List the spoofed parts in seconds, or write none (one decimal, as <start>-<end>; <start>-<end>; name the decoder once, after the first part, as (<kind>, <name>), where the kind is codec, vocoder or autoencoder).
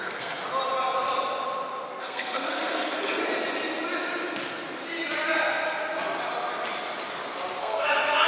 0.0-0.4 (codec, SNAC); 2.0-3.2; 7.6-8.3